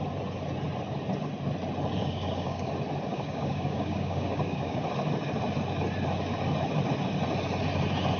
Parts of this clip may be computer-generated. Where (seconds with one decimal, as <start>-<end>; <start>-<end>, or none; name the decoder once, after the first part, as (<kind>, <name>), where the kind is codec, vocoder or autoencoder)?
2.0-2.7 (codec, DAC); 3.1-4.8